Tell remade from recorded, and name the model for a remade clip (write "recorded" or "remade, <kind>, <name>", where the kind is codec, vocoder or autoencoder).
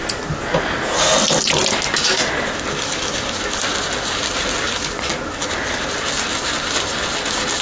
recorded